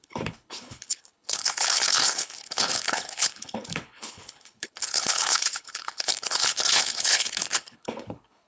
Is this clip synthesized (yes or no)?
yes